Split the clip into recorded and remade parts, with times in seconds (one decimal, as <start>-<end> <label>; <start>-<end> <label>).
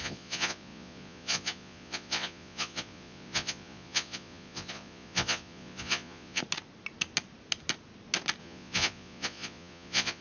0.0-6.4 remade; 6.4-8.4 recorded; 8.4-10.2 remade